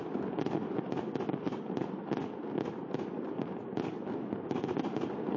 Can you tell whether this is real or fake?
real